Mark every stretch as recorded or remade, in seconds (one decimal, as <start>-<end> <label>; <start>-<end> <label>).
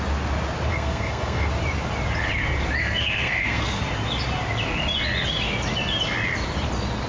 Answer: 0.0-0.7 recorded; 0.7-1.5 remade; 1.5-2.8 recorded; 2.8-3.8 remade; 3.8-7.1 recorded